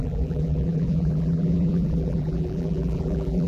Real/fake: fake